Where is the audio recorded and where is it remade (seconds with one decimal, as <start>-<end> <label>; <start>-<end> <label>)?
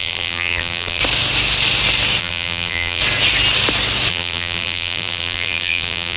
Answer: 0.0-1.0 remade; 1.0-2.2 recorded; 2.2-3.0 remade; 3.0-4.1 recorded; 4.1-6.2 remade